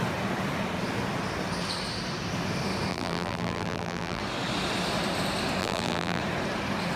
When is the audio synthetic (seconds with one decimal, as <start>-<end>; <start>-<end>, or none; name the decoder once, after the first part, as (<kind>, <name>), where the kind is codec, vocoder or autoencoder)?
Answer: 2.9-4.2 (vocoder, BigVGAN v2); 5.6-6.2